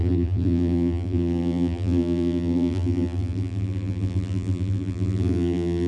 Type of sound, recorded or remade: remade